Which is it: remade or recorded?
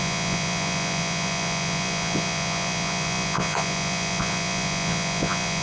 remade